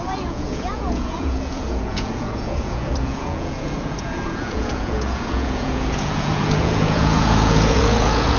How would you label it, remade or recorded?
remade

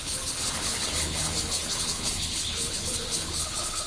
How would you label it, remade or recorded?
remade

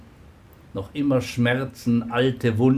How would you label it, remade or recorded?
recorded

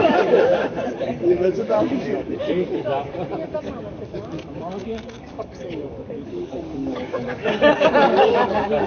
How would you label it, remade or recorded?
remade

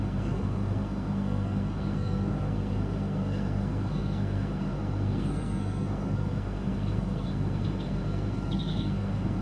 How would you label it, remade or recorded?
remade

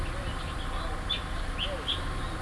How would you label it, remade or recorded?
recorded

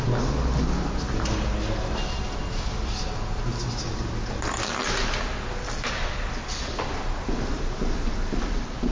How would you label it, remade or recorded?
recorded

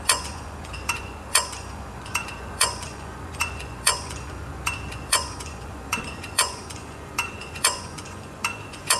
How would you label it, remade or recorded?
remade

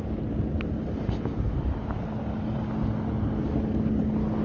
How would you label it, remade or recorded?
recorded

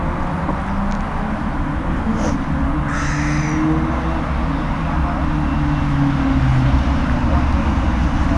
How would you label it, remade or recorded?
recorded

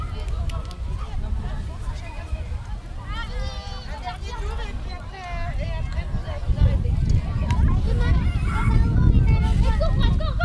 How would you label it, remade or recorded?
recorded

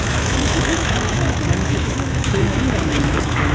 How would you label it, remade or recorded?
remade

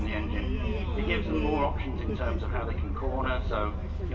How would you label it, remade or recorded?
recorded